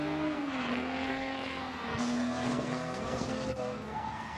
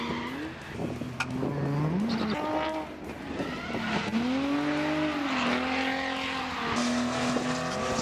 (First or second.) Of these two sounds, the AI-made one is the first